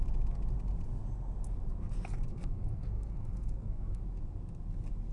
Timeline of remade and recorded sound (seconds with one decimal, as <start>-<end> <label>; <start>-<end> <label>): 0.0-2.3 recorded; 2.3-4.0 remade; 4.0-5.1 recorded